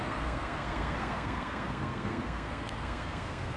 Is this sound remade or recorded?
remade